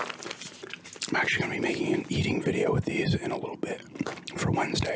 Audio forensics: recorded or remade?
recorded